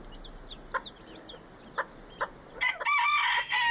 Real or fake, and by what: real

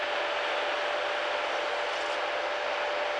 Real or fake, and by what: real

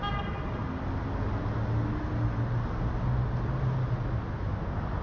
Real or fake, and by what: real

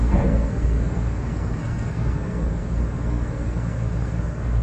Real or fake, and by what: fake, codec, SNAC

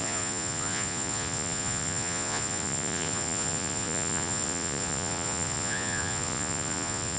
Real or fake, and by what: fake, vocoder, Vocos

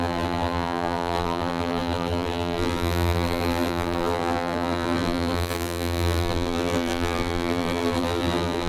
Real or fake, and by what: fake, vocoder, BigVGAN v2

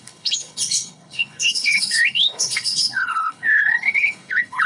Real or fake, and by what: fake, codec, HILCodec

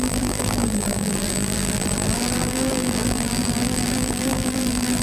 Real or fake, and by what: fake, vocoder, BigVGAN v2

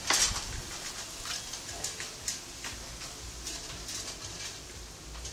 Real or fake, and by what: real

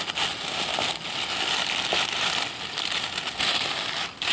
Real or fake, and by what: real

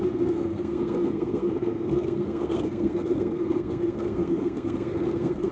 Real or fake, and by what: fake, codec, SNAC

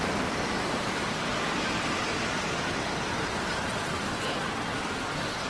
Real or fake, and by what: real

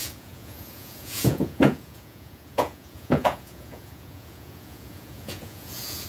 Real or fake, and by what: fake, vocoder, Vocos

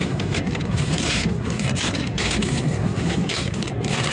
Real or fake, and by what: fake, codec, SNAC